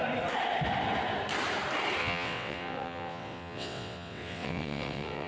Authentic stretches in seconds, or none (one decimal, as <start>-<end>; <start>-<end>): 0.0-2.0